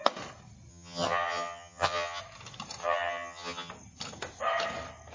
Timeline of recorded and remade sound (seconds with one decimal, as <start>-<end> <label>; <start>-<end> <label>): 0.0-0.7 recorded; 0.7-2.2 remade; 2.2-2.8 recorded; 2.8-3.7 remade; 3.7-5.1 recorded